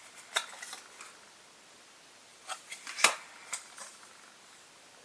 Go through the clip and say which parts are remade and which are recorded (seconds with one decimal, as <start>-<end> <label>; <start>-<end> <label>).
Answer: 0.0-2.3 recorded; 2.3-3.0 remade; 3.0-3.4 recorded; 3.4-4.1 remade; 4.1-5.0 recorded